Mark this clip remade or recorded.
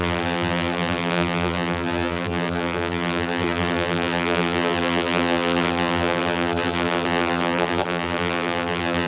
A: remade